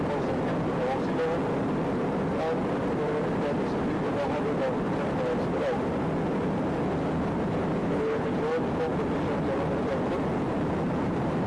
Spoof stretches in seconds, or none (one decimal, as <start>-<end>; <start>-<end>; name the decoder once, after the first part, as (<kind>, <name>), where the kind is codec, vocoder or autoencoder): 7.8-8.3 (codec, HILCodec)